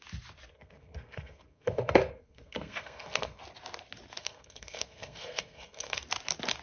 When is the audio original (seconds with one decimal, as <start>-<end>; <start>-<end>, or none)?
0.0-0.5; 3.4-4.2; 6.0-6.6